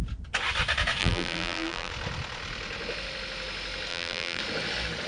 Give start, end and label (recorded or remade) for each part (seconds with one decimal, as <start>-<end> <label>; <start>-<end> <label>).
0.0-1.0 recorded; 1.0-1.9 remade; 1.9-3.9 recorded; 3.9-4.4 remade; 4.4-5.1 recorded